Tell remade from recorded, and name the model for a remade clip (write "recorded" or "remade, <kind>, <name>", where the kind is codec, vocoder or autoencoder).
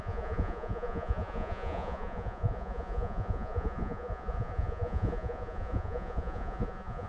remade, vocoder, Vocos